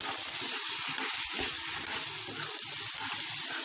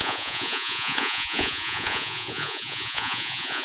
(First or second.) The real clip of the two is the first